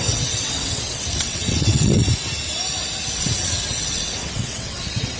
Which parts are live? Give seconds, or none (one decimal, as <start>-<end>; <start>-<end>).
2.0-3.2